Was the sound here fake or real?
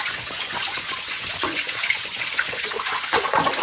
fake